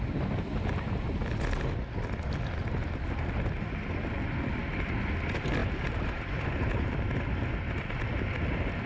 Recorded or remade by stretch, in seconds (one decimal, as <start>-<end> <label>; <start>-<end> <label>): 0.0-5.6 recorded; 5.6-7.5 remade; 7.5-8.9 recorded

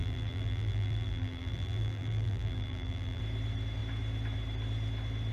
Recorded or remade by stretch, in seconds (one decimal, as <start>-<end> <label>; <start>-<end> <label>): 0.0-3.2 remade; 3.2-5.3 recorded

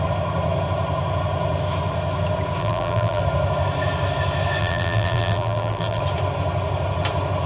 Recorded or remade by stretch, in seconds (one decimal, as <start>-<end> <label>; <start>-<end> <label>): 0.0-2.6 recorded; 2.6-3.2 remade; 3.2-4.6 recorded; 4.6-6.0 remade; 6.0-7.5 recorded

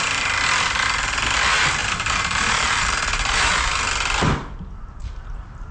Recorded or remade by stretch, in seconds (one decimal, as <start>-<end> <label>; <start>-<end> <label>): 0.0-1.8 recorded; 1.8-3.5 remade; 3.5-5.7 recorded

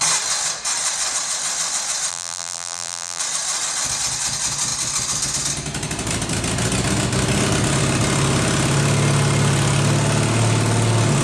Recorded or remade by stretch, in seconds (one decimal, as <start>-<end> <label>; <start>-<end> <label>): 0.0-2.1 recorded; 2.1-3.2 remade; 3.2-11.2 recorded